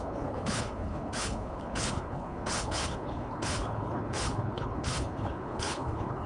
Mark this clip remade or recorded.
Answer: remade